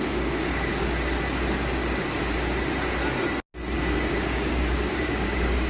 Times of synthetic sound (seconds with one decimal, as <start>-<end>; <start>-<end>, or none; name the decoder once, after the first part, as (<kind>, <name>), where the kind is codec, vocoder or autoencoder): 0.0-0.7 (codec, DAC); 4.1-5.7